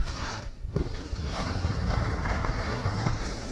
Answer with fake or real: fake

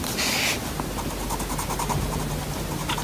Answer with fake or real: real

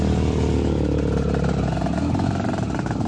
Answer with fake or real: real